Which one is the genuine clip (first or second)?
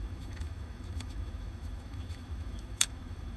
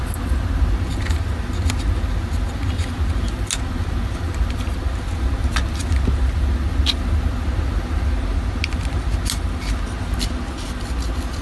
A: second